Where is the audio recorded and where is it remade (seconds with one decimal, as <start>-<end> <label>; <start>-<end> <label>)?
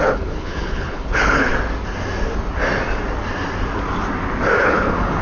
0.0-1.5 remade; 1.5-4.6 recorded; 4.6-5.2 remade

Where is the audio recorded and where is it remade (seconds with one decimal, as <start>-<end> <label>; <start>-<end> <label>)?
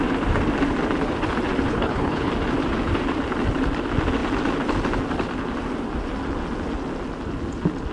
0.0-1.7 recorded; 1.7-2.3 remade; 2.3-7.9 recorded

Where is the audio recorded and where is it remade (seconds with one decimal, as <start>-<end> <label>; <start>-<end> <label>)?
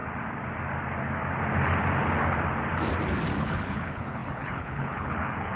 0.0-3.4 recorded; 3.4-5.6 remade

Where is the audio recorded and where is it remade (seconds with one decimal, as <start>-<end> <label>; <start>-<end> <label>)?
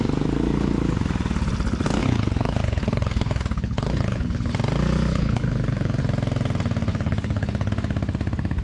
0.0-2.0 recorded; 2.0-4.5 remade; 4.5-5.1 recorded; 5.1-6.0 remade; 6.0-6.9 recorded; 6.9-7.7 remade; 7.7-8.6 recorded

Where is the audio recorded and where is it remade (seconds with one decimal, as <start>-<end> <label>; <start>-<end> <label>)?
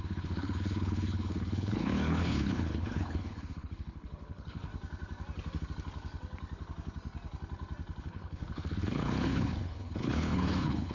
0.0-4.7 remade; 4.7-8.0 recorded; 8.0-10.9 remade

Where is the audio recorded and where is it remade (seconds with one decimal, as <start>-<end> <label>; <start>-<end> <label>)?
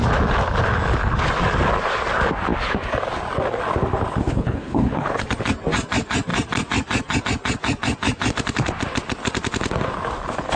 0.0-4.2 recorded; 4.2-5.3 remade; 5.3-10.6 recorded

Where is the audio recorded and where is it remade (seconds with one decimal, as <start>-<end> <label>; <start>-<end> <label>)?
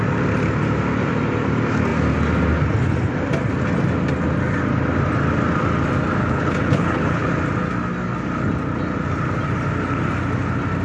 0.0-6.2 recorded; 6.2-7.3 remade; 7.3-10.8 recorded